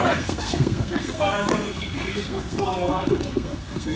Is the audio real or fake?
fake